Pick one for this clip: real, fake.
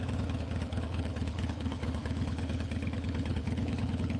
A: fake